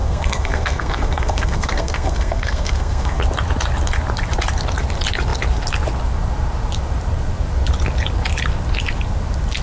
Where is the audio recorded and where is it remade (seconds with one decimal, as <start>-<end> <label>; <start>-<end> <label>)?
0.0-3.2 remade; 3.2-9.6 recorded